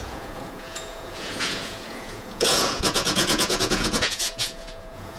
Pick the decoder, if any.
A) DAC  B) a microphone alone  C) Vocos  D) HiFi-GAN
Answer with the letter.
C